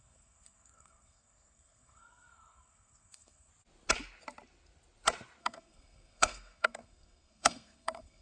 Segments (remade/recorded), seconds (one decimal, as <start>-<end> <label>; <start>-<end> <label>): 0.0-3.5 remade; 3.5-5.4 recorded; 5.4-8.2 remade